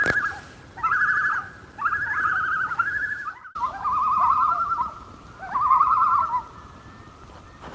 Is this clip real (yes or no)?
no